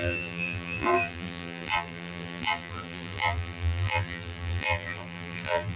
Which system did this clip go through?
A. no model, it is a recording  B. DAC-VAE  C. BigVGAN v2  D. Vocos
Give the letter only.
C